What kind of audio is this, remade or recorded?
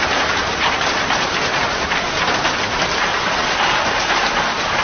recorded